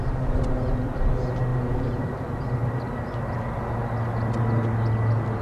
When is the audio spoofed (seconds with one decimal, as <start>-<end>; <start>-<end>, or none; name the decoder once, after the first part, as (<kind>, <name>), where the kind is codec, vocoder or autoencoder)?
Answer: 1.5-2.1 (vocoder, BigVGAN v2)